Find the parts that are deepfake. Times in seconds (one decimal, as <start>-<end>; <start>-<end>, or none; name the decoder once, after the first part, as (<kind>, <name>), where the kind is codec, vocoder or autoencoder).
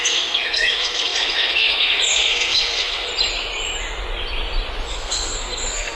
0.0-3.1 (codec, SNAC); 4.9-5.9